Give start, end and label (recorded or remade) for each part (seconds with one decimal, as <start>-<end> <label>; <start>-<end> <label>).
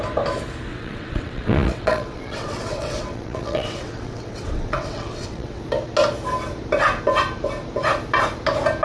0.0-0.7 recorded; 0.7-5.6 remade; 5.6-8.8 recorded